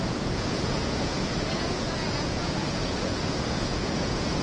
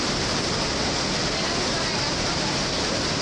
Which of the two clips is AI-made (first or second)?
first